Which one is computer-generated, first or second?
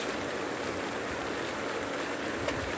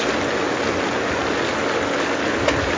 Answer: first